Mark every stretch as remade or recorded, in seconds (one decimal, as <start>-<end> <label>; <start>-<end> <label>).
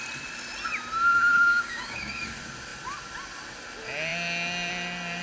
0.0-1.3 recorded; 1.3-2.2 remade; 2.2-5.2 recorded